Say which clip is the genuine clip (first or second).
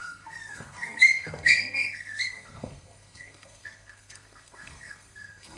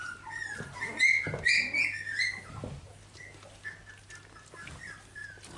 second